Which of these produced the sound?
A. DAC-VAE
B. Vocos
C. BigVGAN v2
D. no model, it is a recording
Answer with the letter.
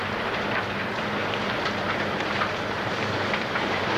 C